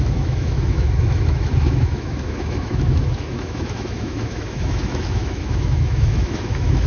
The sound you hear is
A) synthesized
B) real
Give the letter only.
A